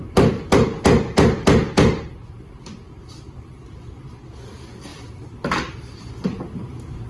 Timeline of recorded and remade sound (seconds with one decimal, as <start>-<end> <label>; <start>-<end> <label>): 0.0-4.9 recorded; 4.9-7.1 remade